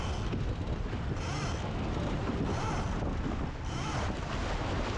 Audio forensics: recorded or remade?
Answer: recorded